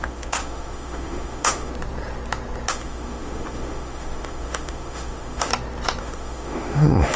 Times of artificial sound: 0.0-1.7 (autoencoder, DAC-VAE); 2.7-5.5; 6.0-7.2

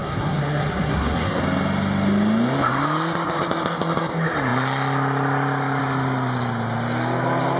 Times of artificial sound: 0.0-1.4 (codec, SNAC)

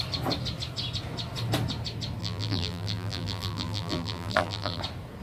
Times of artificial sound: 2.2-4.8 (vocoder, BigVGAN v2)

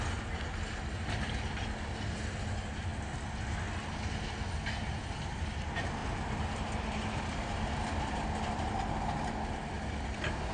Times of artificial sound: none